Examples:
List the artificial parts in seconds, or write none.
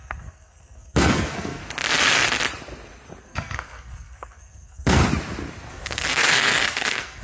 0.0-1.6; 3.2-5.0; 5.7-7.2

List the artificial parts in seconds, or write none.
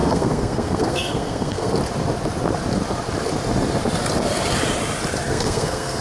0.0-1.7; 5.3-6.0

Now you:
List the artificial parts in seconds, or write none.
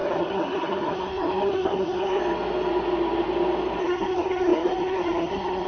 0.0-2.2; 3.8-5.7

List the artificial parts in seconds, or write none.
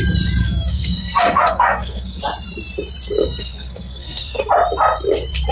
0.4-2.2; 3.2-4.5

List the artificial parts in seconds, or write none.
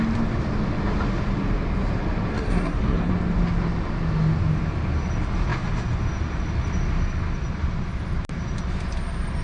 2.3-3.1